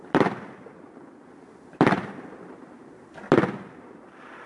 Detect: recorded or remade remade